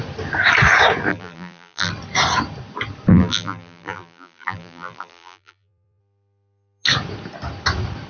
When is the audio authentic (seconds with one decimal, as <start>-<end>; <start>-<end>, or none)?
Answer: 0.0-1.1; 1.9-3.1; 6.0-8.1